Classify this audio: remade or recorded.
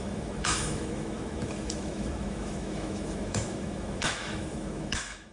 remade